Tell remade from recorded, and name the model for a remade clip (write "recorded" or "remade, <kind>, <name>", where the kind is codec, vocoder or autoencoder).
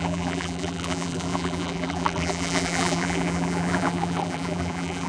remade, vocoder, BigVGAN v2